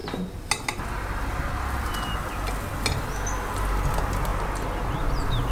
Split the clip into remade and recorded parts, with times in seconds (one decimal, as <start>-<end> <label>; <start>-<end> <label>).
0.0-5.5 recorded

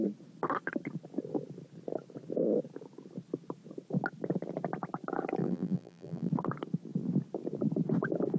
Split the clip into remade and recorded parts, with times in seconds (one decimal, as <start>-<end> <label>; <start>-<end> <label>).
0.0-5.4 recorded; 5.4-6.3 remade; 6.3-8.4 recorded

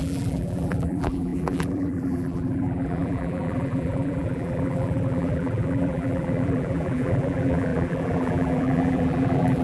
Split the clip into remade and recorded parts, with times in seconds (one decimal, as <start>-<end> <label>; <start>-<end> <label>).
0.0-9.6 remade

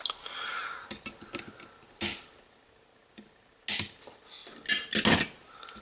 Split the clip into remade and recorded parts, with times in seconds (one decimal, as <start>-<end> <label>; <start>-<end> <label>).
0.0-5.8 recorded

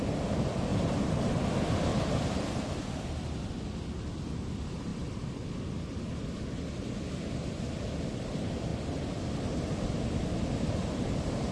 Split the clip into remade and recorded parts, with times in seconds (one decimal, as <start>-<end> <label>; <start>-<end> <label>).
0.0-0.7 recorded; 0.7-1.3 remade; 1.3-1.9 recorded; 1.9-3.4 remade; 3.4-11.5 recorded

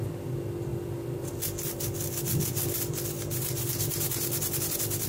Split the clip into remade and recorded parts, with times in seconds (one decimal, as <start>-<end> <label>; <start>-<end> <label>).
0.0-0.7 recorded; 0.7-1.3 remade; 1.3-5.1 recorded

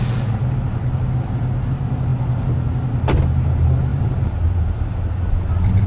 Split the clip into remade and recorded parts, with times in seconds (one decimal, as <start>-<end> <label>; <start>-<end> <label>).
0.0-3.9 recorded; 3.9-5.5 remade; 5.5-5.9 recorded

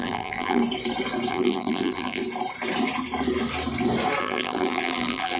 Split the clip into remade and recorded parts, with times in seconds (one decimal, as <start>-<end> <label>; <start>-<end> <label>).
0.0-0.6 remade; 0.6-1.3 recorded; 1.3-2.2 remade; 2.2-4.2 recorded; 4.2-5.4 remade